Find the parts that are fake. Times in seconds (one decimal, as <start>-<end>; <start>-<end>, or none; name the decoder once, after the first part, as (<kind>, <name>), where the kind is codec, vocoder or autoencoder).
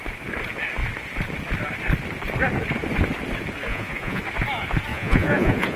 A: 3.7-4.2 (vocoder, Vocos); 4.9-5.8